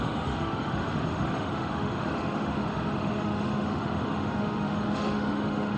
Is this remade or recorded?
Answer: remade